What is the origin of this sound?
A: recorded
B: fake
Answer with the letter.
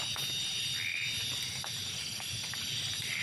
A